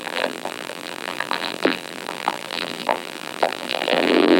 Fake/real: fake